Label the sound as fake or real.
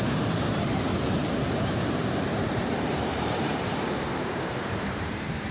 fake